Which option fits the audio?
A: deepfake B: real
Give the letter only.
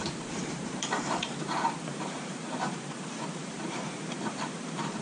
A